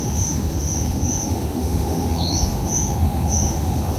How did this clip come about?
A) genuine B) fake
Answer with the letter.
B